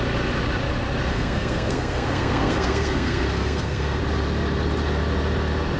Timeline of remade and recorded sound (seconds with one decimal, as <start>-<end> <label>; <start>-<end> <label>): 0.0-1.1 recorded; 1.1-4.0 remade; 4.0-5.8 recorded